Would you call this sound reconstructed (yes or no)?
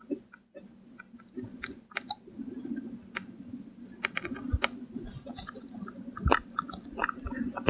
no